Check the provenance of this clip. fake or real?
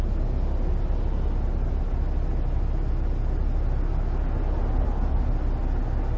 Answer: real